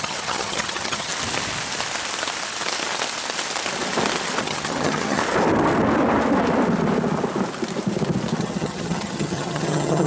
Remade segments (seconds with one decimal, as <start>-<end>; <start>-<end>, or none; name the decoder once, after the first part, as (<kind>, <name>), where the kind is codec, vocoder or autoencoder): 0.0-1.1 (vocoder, HiFi-GAN); 4.4-5.2; 8.4-10.1

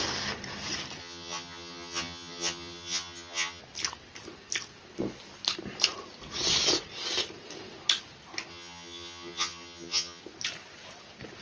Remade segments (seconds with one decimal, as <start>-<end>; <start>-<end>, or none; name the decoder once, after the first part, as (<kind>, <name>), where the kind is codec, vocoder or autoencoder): 1.0-3.6 (vocoder, HiFi-GAN); 8.5-10.2

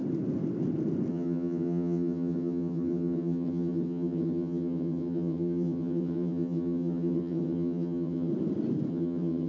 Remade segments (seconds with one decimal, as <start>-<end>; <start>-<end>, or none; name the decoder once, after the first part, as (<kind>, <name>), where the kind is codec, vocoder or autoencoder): 1.1-8.3 (vocoder, HiFi-GAN); 8.9-9.5

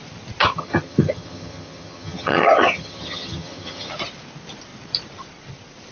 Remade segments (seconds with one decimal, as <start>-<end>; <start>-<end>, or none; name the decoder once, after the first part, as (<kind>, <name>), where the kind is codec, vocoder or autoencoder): 0.4-3.9 (vocoder, HiFi-GAN)

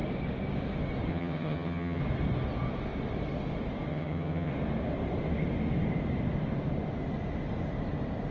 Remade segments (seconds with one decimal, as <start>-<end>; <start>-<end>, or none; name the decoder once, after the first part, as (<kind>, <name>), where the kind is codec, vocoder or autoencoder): 1.1-2.0 (vocoder, HiFi-GAN); 3.9-4.5